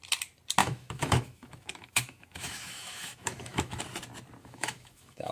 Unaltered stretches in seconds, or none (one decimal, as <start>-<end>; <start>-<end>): 0.0-0.6; 3.8-4.4